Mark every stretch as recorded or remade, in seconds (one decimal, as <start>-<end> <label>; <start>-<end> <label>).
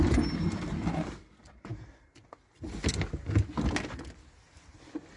0.0-5.2 recorded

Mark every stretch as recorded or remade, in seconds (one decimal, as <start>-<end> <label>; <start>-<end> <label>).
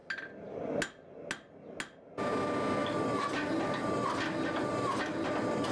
0.0-5.7 recorded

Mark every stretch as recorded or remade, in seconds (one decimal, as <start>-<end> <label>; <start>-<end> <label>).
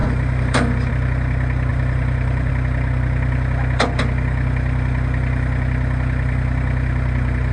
0.0-0.9 remade; 0.9-1.7 recorded; 1.7-2.5 remade; 2.5-7.5 recorded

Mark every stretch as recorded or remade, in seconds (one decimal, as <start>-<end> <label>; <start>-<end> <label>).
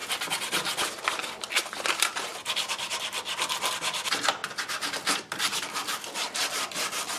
0.0-4.4 remade; 4.4-5.3 recorded; 5.3-7.2 remade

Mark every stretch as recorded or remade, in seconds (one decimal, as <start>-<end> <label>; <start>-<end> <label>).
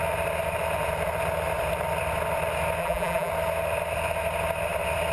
0.0-2.8 recorded; 2.8-3.3 remade; 3.3-5.1 recorded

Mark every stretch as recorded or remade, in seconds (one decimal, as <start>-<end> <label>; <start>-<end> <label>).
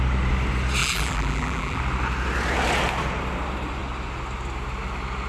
0.0-0.8 recorded; 0.8-1.8 remade; 1.8-5.3 recorded